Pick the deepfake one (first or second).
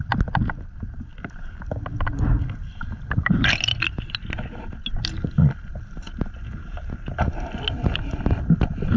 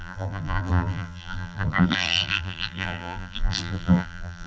second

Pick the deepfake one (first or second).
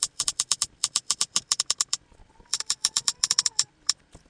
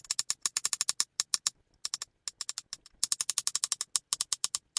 first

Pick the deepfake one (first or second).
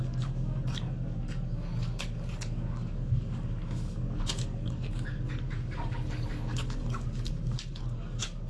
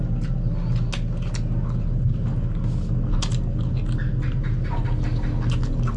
first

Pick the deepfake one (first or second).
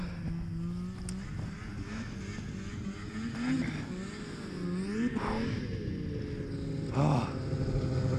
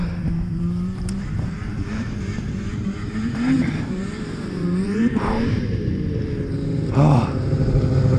second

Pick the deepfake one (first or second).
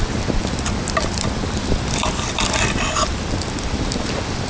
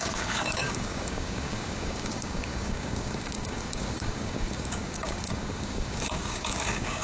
second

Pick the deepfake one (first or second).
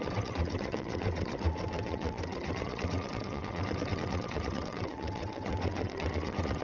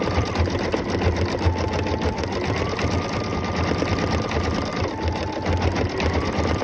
first